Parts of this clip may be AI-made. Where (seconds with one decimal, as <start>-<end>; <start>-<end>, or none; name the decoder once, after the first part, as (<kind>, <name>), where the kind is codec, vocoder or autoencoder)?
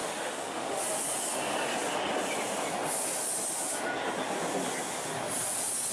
0.0-0.8 (autoencoder, DAC-VAE)